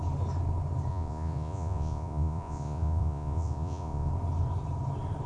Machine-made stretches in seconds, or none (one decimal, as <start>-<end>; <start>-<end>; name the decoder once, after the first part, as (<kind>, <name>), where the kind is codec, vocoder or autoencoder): 0.9-4.1 (vocoder, Vocos)